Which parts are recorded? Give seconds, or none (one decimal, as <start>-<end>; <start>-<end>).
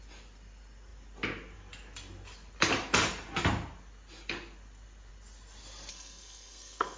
0.0-5.9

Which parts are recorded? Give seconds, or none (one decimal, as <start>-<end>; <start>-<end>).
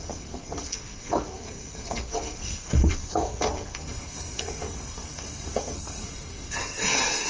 none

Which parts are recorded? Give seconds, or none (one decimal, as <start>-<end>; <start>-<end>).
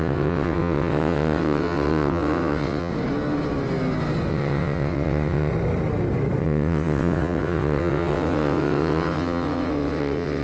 2.9-4.3; 5.5-6.4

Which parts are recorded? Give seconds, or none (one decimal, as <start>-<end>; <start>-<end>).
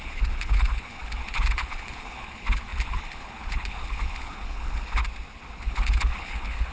5.0-5.6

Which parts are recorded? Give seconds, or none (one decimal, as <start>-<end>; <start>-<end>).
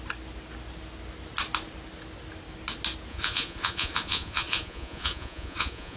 0.0-3.1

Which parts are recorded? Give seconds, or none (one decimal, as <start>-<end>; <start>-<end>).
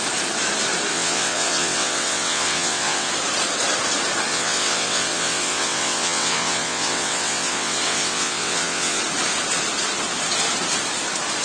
0.0-0.9; 3.1-4.3; 9.0-11.4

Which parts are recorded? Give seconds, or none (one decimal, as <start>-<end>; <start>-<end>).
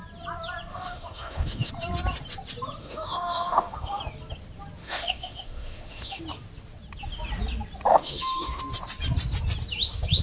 0.0-0.7; 1.7-2.8; 4.0-4.8; 6.2-7.9; 8.6-10.2